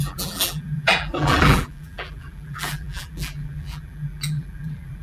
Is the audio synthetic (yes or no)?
yes